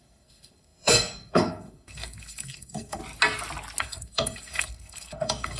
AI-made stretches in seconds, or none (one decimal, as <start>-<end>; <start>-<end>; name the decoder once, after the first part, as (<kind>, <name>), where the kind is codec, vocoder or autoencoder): 0.0-3.0 (codec, SNAC); 3.8-5.6